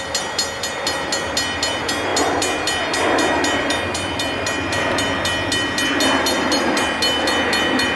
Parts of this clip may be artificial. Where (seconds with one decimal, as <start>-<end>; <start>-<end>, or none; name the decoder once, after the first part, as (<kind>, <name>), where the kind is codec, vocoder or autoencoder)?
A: none